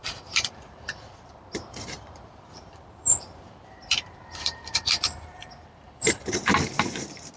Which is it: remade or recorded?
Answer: remade